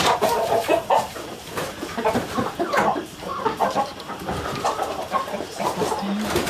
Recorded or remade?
remade